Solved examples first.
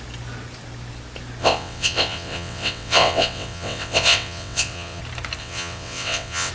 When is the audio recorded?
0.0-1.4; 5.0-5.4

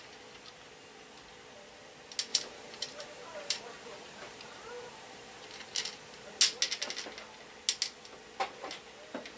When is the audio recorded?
0.0-2.3; 6.4-9.4